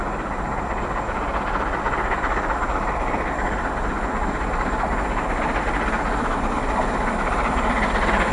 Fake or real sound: real